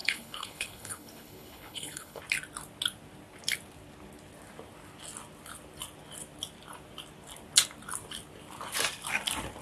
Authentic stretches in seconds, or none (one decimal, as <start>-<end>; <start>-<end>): 2.2-9.6